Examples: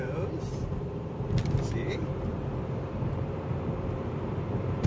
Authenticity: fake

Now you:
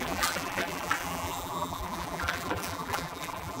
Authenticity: fake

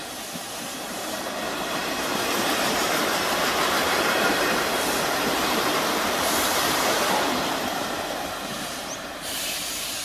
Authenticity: fake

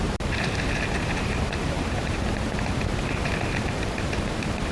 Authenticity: fake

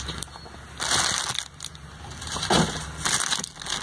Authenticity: real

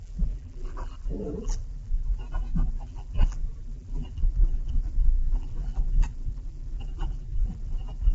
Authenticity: fake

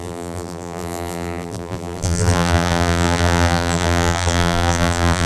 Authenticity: fake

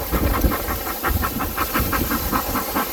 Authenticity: real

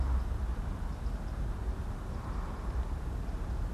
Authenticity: real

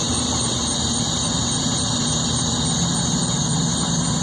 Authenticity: real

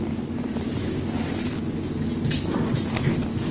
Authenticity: real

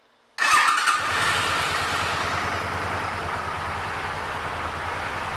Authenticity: real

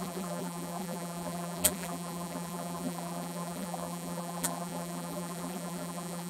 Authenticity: fake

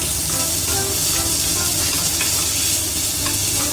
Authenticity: real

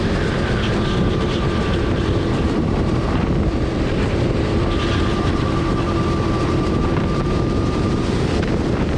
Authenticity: fake